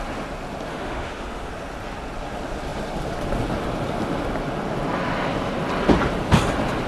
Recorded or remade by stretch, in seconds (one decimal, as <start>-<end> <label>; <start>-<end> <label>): 0.0-0.7 recorded; 0.7-1.5 remade; 1.5-6.9 recorded